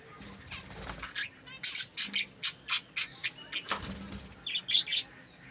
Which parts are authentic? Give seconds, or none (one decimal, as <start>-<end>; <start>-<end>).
0.0-5.5